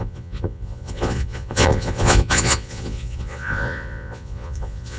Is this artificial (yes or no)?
yes